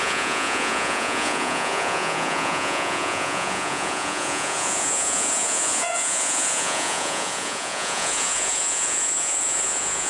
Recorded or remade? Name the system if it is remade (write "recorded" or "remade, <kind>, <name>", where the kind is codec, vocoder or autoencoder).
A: remade, vocoder, Vocos